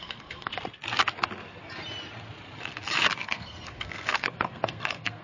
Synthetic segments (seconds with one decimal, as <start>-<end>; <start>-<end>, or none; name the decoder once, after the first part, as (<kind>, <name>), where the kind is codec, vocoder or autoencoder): 0.0-0.5 (codec, SNAC); 3.2-5.2